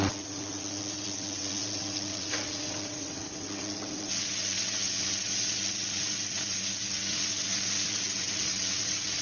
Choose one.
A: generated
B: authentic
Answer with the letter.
A